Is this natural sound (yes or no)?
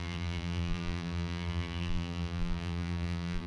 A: no